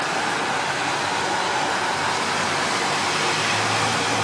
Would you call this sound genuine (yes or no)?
yes